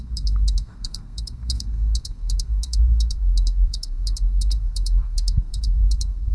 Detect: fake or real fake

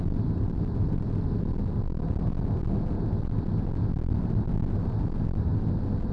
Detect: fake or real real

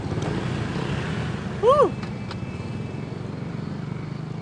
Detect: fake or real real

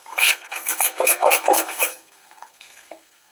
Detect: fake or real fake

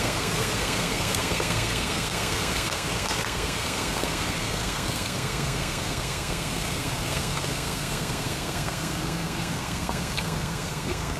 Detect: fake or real fake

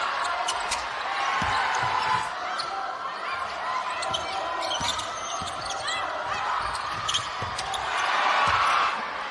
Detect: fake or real real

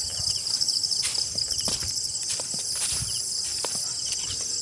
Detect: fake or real real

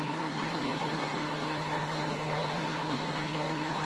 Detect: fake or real fake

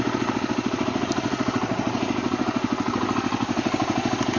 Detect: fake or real real